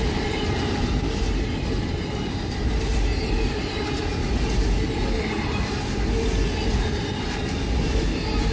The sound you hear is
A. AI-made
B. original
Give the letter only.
B